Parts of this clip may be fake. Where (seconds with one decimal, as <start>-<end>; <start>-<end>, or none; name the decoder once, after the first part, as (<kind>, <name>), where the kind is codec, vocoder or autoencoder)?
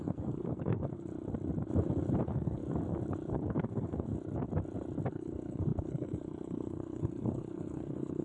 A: 0.0-1.1 (codec, SNAC); 2.2-2.6; 3.3-4.1; 5.1-8.2